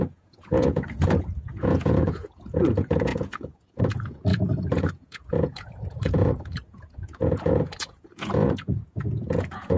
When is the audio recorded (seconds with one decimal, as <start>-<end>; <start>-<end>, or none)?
none